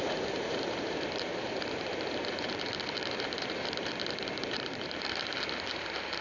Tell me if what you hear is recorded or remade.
remade